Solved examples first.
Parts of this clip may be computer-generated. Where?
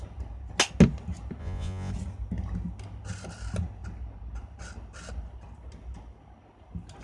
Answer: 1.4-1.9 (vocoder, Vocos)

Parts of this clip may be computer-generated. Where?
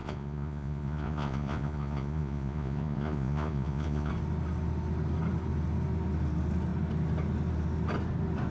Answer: 0.0-4.1 (vocoder, Vocos)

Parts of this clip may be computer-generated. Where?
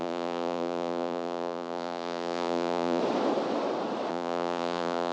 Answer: 0.0-3.0 (vocoder, Vocos); 4.1-5.1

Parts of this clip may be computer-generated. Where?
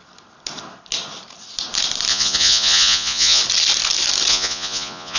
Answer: 2.1-3.4 (vocoder, Vocos); 4.3-5.2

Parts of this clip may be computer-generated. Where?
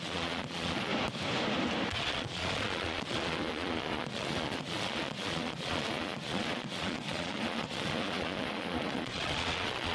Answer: 0.0-0.9 (vocoder, Vocos); 1.9-9.9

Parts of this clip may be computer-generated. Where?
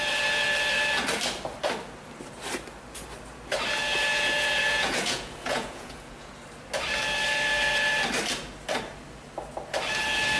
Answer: 4.1-6.3 (vocoder, Vocos)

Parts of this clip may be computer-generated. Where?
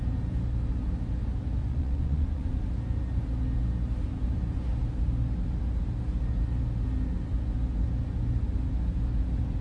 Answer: 1.6-2.6 (vocoder, Vocos)